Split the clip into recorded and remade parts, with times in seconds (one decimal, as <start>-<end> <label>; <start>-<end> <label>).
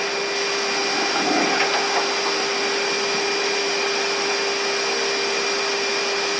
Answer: 0.0-6.4 recorded